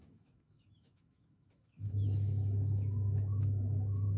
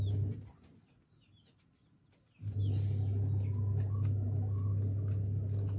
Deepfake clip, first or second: first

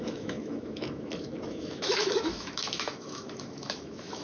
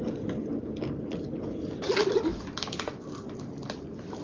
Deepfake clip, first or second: first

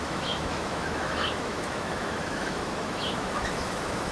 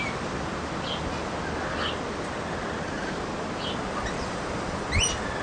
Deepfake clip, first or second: first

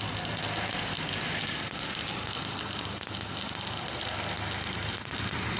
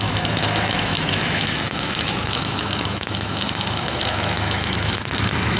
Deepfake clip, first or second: second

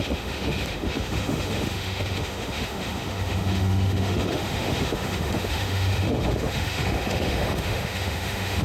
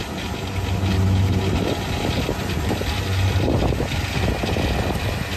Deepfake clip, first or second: first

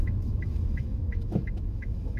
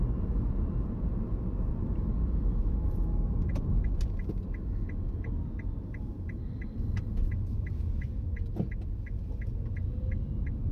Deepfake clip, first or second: first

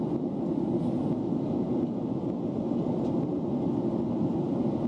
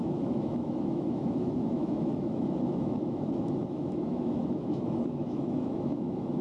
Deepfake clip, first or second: second